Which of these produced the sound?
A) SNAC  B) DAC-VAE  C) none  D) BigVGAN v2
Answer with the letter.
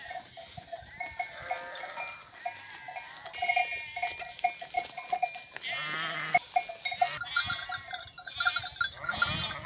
C